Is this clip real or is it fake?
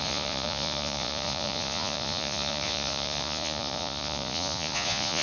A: fake